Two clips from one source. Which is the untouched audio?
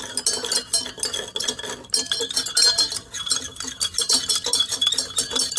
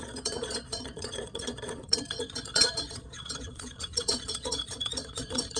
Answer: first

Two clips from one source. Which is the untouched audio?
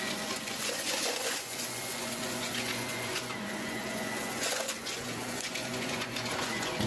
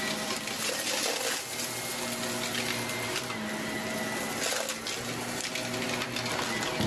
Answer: second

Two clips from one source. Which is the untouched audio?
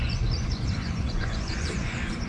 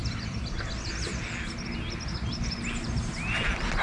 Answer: second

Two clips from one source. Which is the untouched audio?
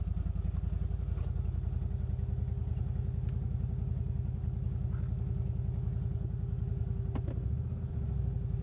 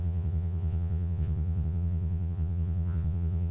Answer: first